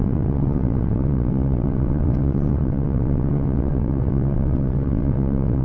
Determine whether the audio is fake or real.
fake